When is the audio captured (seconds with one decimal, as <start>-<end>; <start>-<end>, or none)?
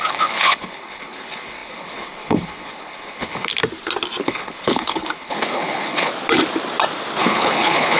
3.5-4.2; 6.1-7.2